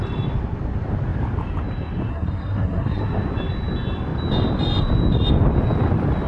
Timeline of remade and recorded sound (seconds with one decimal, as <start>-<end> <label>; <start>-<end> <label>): 0.0-2.1 recorded; 2.1-3.0 remade; 3.0-6.3 recorded